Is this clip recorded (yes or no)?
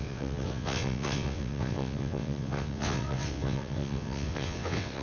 no